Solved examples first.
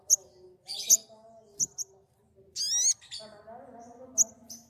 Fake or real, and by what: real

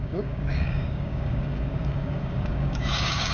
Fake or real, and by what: fake, codec, DAC